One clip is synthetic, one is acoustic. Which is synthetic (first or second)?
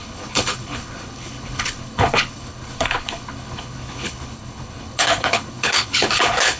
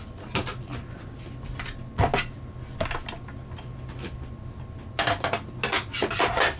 first